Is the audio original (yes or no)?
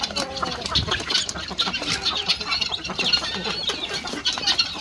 yes